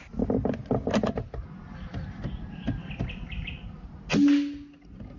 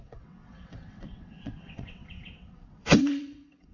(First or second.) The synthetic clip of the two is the second